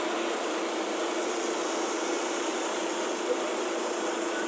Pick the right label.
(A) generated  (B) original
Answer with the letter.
A